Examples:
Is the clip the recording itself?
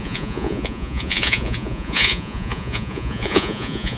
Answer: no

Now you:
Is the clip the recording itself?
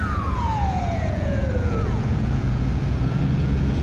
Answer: no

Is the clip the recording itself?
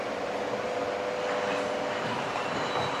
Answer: yes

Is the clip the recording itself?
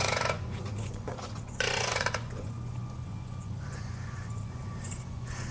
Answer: no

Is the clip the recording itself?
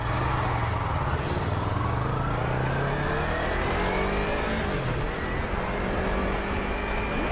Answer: yes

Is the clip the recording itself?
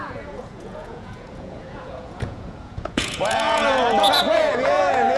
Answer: no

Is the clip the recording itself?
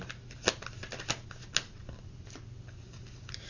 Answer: yes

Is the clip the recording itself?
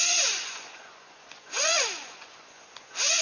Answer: no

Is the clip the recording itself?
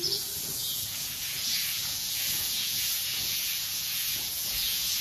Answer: no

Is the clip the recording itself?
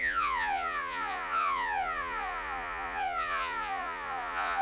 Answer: no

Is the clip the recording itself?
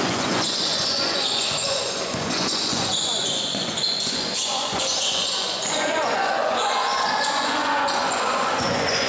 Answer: no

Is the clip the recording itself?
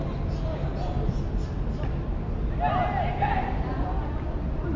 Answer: yes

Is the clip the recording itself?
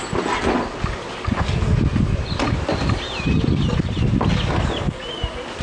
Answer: yes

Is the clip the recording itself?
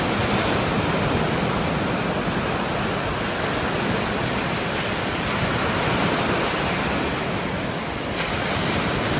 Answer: yes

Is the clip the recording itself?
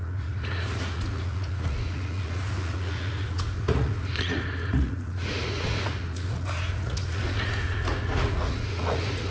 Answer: no